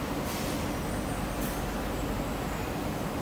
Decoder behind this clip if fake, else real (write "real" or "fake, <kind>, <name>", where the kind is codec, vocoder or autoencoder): real